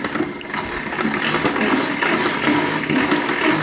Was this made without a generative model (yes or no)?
yes